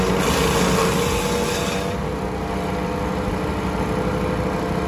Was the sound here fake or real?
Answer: real